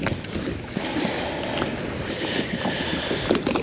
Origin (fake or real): real